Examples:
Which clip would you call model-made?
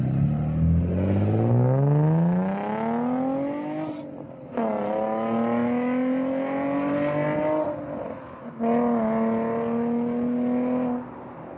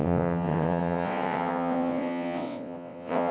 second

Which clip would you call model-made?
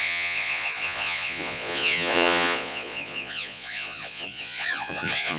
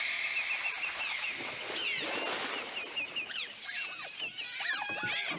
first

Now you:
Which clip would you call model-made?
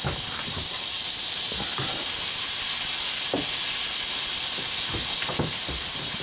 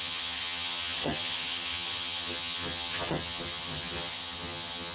second